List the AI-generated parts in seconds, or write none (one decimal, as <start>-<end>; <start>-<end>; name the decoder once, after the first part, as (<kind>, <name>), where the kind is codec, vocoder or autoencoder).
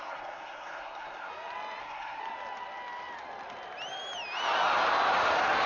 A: 0.0-1.3 (codec, SNAC); 1.8-2.2